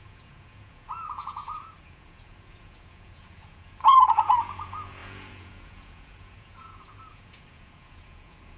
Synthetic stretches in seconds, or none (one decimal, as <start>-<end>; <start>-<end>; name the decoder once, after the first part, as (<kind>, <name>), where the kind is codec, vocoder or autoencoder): 0.0-8.6 (vocoder, Vocos)